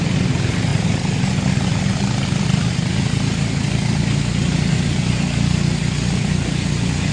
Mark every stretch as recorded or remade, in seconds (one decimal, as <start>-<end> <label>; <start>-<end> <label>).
0.0-7.1 recorded